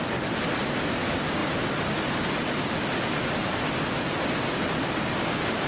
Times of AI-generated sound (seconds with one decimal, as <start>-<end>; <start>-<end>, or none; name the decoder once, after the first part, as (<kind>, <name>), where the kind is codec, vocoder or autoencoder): none